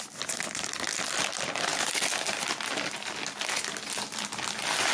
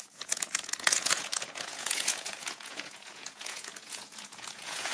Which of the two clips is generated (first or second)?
second